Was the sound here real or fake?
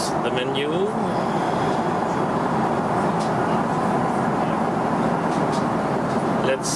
real